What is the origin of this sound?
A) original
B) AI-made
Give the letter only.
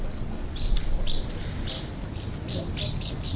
A